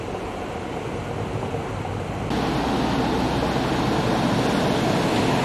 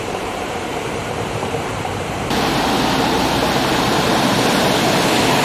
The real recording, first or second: first